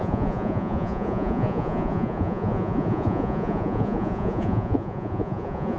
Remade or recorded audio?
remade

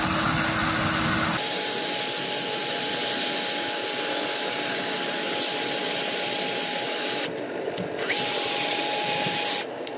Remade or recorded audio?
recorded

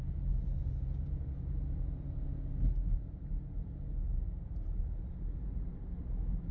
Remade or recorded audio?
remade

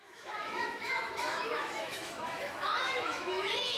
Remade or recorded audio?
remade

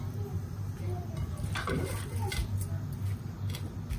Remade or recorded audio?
recorded